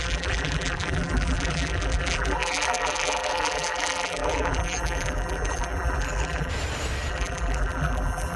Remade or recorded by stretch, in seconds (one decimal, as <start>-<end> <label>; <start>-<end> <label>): 0.0-6.5 remade; 6.5-7.1 recorded; 7.1-8.4 remade